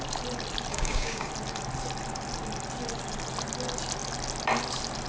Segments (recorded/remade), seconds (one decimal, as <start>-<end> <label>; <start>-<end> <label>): 0.0-0.7 recorded; 0.7-1.3 remade; 1.3-5.1 recorded